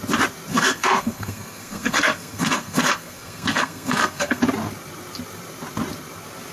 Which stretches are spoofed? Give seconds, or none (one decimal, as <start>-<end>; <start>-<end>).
0.5-4.4